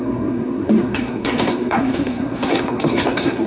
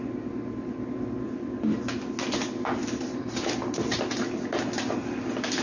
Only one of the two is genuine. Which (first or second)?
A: second